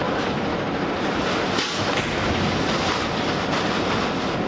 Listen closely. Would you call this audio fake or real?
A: fake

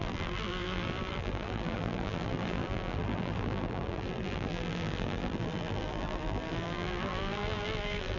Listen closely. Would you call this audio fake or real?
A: fake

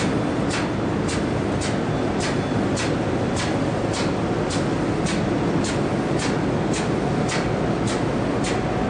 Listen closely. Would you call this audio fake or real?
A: real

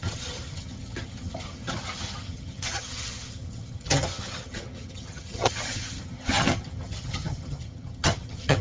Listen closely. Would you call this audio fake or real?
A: fake